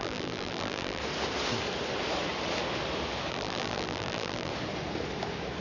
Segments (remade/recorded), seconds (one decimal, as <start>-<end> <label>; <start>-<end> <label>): 0.0-1.0 remade; 1.0-3.3 recorded; 3.3-4.5 remade; 4.5-5.6 recorded